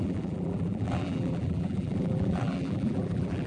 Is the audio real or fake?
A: fake